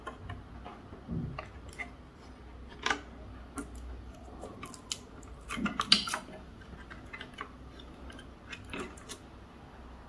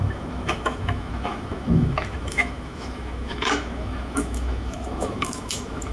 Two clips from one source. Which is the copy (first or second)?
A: second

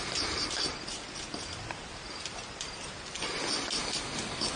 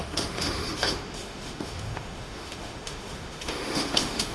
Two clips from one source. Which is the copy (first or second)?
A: second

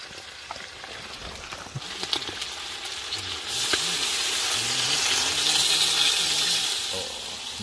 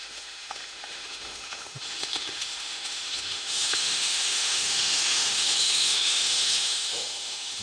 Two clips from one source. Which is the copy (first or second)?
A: second